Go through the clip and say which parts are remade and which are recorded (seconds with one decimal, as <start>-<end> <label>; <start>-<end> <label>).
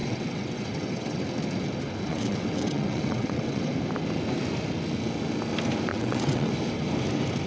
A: 0.0-1.2 remade; 1.2-2.1 recorded; 2.1-3.7 remade; 3.7-5.9 recorded; 5.9-6.5 remade; 6.5-7.5 recorded